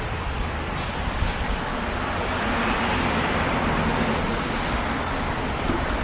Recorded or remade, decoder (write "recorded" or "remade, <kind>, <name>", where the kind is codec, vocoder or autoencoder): recorded